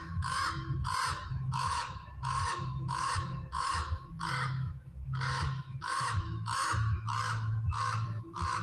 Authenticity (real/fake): fake